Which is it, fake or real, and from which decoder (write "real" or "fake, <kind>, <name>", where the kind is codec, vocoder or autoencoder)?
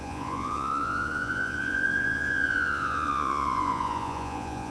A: fake, vocoder, Vocos